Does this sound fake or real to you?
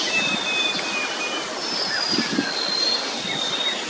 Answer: real